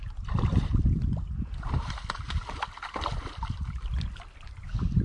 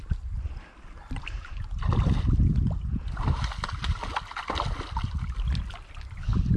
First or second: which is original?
second